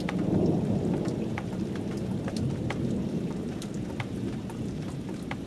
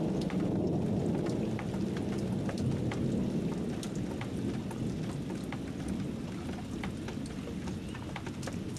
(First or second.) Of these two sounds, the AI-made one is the first